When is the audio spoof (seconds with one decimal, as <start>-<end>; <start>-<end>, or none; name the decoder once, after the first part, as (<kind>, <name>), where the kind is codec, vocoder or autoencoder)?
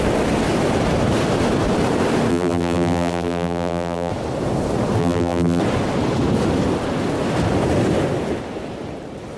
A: 2.3-4.1 (vocoder, BigVGAN v2); 5.0-5.6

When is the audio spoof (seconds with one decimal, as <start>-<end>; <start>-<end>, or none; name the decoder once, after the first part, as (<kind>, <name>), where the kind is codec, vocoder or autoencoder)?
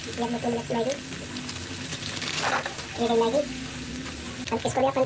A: 1.9-3.5 (vocoder, BigVGAN v2)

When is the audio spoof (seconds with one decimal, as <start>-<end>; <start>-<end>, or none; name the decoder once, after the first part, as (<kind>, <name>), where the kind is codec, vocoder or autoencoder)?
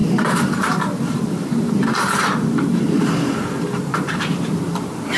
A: 0.0-3.1 (vocoder, BigVGAN v2); 3.9-4.6